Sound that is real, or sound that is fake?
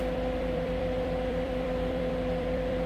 fake